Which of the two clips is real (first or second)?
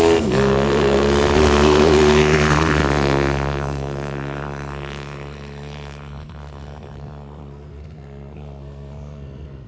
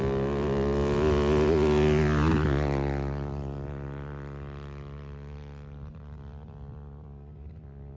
second